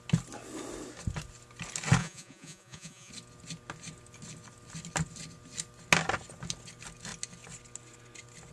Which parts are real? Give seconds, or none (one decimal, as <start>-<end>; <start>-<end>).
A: 0.0-2.0; 3.1-8.5